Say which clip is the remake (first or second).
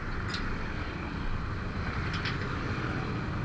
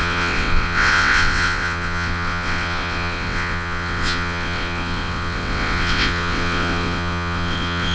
second